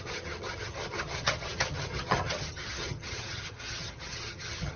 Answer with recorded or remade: remade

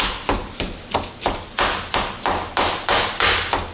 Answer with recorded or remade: recorded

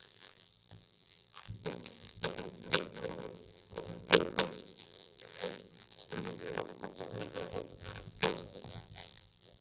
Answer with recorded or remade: remade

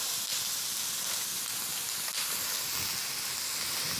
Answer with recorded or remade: recorded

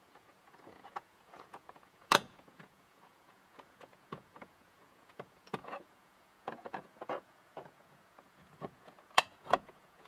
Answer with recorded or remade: remade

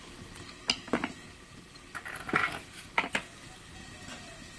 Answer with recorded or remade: recorded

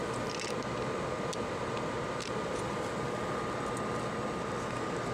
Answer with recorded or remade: recorded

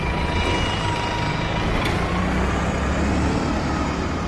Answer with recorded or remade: recorded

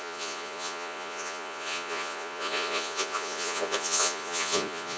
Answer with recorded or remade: remade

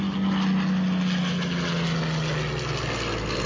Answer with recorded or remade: recorded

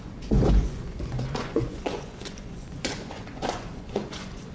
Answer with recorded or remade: remade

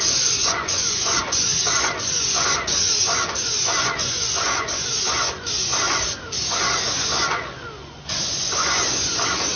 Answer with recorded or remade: remade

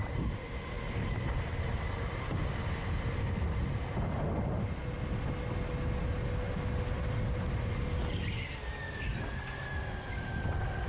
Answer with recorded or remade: recorded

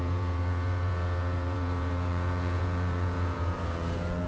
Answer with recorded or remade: remade